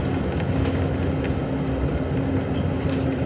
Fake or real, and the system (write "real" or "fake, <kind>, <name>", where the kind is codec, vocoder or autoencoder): real